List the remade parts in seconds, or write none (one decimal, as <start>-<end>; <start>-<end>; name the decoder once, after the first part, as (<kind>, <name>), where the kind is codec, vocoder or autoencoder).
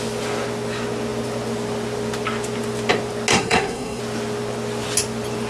3.3-4.0 (codec, SNAC)